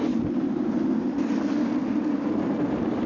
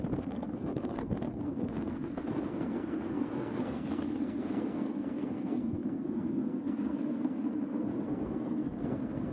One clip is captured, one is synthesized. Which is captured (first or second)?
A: first